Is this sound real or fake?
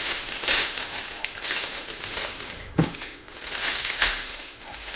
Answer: fake